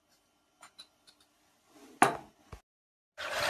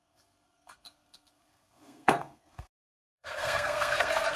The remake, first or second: second